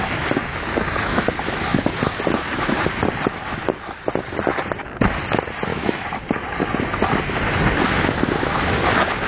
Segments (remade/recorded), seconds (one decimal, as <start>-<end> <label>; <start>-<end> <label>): 0.0-5.7 recorded; 5.7-6.2 remade; 6.2-9.3 recorded